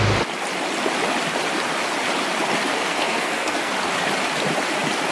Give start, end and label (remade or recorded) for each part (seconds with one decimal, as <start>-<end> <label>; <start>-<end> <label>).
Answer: 0.0-2.7 recorded; 2.7-3.7 remade; 3.7-5.1 recorded